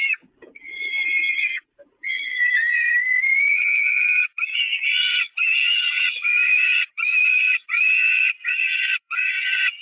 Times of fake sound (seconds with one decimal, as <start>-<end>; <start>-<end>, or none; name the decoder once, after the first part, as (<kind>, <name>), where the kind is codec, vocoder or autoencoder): 0.0-9.8 (vocoder, Vocos)